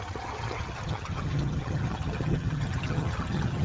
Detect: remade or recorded remade